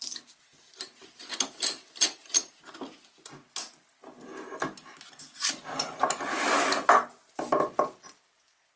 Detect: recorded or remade recorded